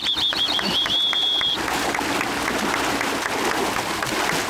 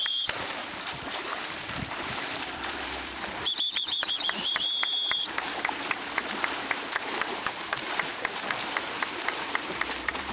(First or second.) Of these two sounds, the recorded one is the first